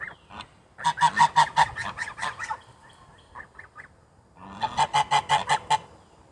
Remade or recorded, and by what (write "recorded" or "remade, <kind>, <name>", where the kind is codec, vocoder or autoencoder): recorded